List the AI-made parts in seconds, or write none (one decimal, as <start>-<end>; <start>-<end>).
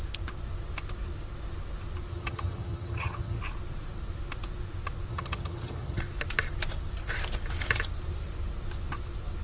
2.1-3.4; 5.1-6.0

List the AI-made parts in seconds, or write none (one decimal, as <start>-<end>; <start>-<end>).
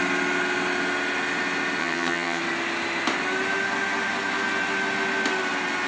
1.8-2.4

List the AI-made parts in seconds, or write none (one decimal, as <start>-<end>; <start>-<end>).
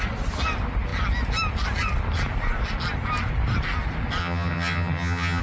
4.2-5.4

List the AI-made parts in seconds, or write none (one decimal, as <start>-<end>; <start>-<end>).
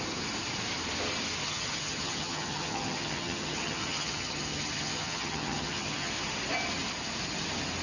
1.4-6.1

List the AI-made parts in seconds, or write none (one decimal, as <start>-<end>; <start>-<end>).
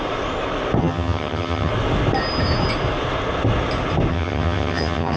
0.8-1.7; 4.1-5.2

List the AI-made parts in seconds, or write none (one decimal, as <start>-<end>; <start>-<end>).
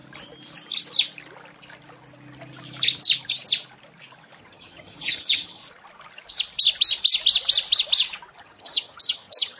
4.4-5.6; 8.4-9.6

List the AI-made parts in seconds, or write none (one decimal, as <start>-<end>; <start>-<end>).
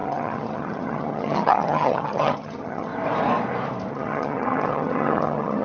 0.0-2.9; 3.9-5.6